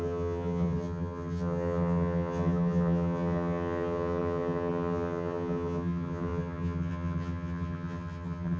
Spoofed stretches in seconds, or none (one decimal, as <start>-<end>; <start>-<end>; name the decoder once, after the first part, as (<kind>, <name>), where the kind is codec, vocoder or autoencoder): 0.0-8.6 (vocoder, HiFi-GAN)